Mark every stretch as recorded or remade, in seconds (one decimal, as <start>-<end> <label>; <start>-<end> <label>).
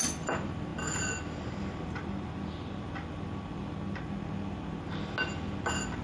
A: 0.0-6.0 recorded